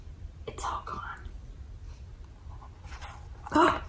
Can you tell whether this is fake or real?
real